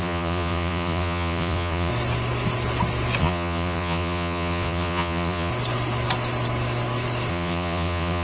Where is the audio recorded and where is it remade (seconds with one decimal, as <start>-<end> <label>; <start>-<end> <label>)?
0.0-1.9 remade; 1.9-3.2 recorded; 3.2-5.5 remade; 5.5-7.3 recorded; 7.3-8.2 remade